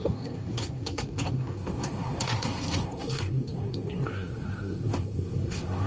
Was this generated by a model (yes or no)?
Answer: yes